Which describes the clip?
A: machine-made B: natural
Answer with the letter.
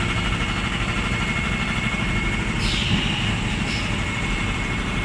B